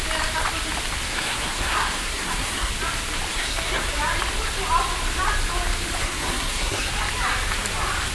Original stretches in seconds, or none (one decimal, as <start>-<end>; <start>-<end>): 0.0-1.1; 2.7-3.3; 3.9-6.0; 6.9-8.1